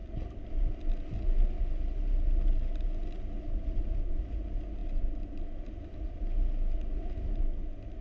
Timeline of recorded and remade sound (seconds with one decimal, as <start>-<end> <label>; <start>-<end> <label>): 0.0-8.0 recorded

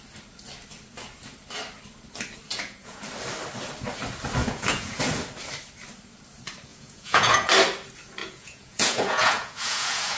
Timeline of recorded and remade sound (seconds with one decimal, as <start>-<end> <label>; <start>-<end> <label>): 0.0-2.5 recorded; 2.5-3.0 remade; 3.0-4.4 recorded; 4.4-5.0 remade; 5.0-6.7 recorded; 6.7-7.5 remade; 7.5-8.2 recorded; 8.2-10.2 remade

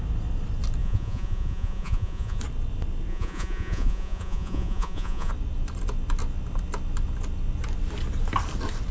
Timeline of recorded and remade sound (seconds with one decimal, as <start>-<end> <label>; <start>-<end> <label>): 0.0-0.8 recorded; 0.8-2.4 remade; 2.4-3.1 recorded; 3.1-5.3 remade; 5.3-8.9 recorded

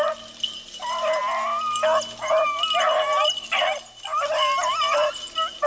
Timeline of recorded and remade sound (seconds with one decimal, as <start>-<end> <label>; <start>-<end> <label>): 0.0-5.7 recorded

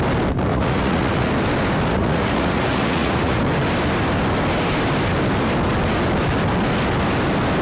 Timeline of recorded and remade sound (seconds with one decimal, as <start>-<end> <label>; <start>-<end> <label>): 0.0-0.5 recorded; 0.5-1.3 remade; 1.3-1.9 recorded; 1.9-3.4 remade; 3.4-7.6 recorded

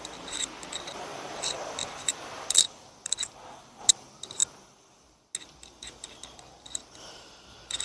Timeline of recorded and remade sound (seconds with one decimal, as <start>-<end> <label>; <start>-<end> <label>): 0.0-7.8 recorded